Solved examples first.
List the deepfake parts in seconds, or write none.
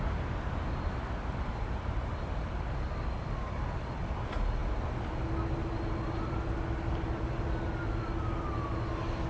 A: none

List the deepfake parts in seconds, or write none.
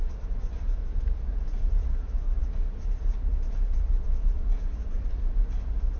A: 0.0-6.0 (vocoder, BigVGAN v2)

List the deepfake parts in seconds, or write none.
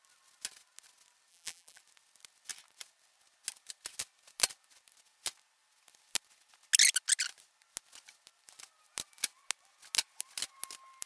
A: 1.3-1.8 (vocoder, BigVGAN v2)